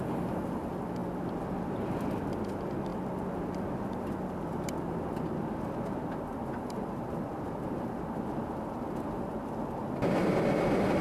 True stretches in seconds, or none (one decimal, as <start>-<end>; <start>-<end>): 0.0-4.5; 9.3-11.0